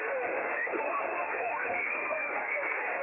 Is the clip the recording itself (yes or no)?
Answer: no